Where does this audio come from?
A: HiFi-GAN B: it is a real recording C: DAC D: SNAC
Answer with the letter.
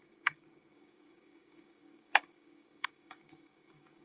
C